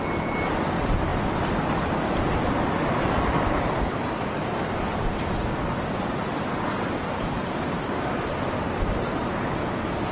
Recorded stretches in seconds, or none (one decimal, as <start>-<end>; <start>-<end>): 0.0-10.1